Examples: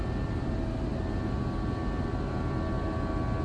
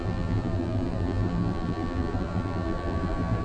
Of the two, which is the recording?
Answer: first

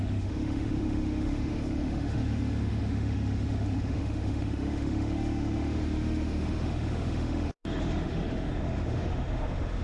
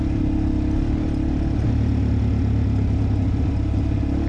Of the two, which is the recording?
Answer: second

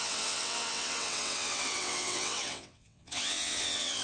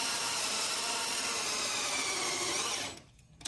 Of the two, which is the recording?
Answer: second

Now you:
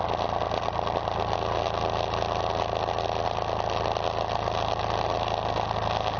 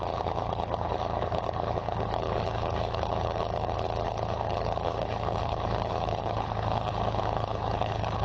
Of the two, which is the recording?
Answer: first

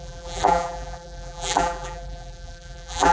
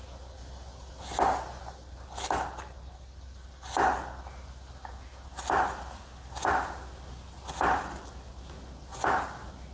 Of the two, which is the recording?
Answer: second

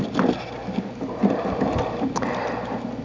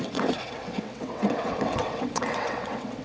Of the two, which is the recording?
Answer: first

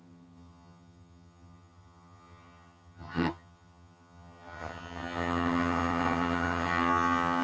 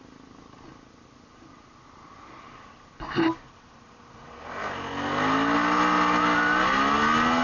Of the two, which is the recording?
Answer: second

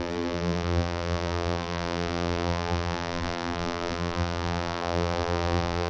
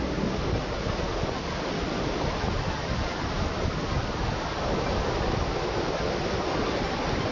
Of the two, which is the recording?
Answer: second